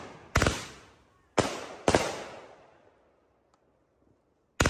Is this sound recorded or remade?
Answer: recorded